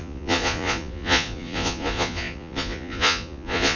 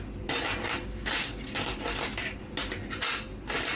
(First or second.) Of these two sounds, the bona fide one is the second